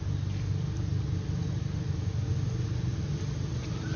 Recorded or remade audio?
recorded